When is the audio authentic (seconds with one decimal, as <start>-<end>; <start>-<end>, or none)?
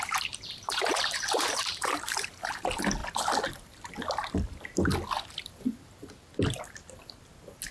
3.0-7.7